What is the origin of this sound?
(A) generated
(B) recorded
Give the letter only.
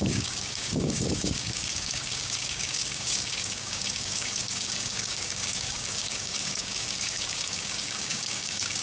A